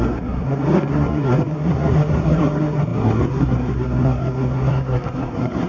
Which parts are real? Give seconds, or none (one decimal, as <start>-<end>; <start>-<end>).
none